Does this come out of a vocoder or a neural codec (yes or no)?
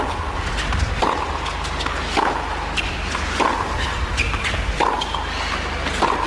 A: no